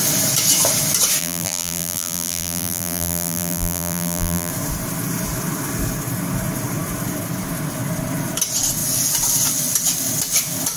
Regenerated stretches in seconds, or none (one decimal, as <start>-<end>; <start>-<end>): 1.2-4.5

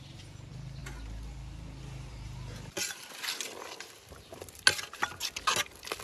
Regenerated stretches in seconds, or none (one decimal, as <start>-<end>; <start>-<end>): none

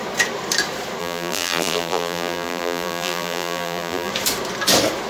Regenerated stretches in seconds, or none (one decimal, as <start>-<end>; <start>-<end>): 1.0-4.1

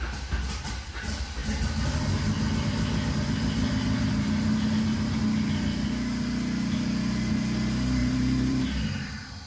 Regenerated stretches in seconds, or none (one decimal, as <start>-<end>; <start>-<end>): 8.0-9.1

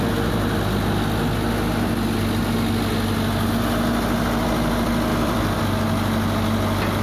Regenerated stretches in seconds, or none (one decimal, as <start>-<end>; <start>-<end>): 5.1-5.6

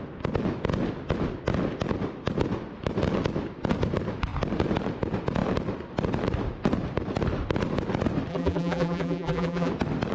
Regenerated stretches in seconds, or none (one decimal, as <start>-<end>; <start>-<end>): 8.3-9.7

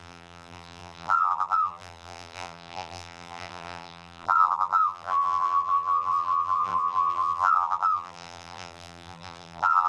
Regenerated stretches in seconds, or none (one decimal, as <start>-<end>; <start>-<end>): 0.0-9.9

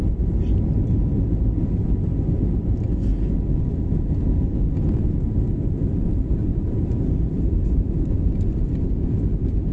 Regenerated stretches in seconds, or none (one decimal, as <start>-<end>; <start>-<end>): 6.5-8.2